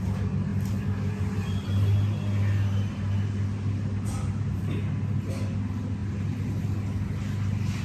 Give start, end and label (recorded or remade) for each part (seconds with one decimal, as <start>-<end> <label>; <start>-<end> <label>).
0.0-7.8 recorded